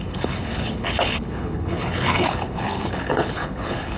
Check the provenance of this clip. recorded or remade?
remade